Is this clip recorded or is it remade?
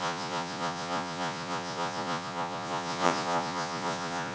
remade